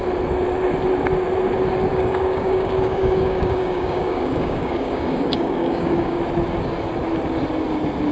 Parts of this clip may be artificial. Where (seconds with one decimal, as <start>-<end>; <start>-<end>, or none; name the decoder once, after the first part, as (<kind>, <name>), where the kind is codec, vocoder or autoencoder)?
1.9-6.2 (codec, DAC)